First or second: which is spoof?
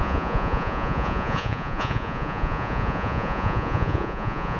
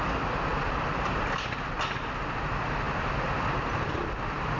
first